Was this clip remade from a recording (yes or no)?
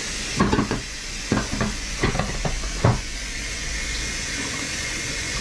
yes